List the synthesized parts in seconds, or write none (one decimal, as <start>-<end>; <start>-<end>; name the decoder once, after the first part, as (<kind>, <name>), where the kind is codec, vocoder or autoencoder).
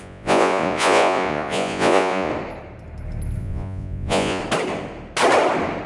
0.0-2.3 (vocoder, Vocos); 3.4-4.4